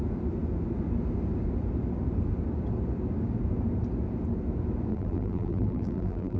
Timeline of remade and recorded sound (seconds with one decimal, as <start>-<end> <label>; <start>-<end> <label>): 0.0-4.9 recorded; 4.9-6.4 remade